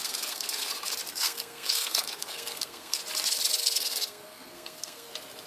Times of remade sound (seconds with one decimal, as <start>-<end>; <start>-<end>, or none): 0.0-0.7; 1.1-3.0; 3.6-5.1